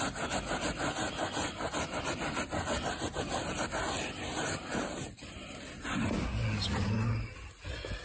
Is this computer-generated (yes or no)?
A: no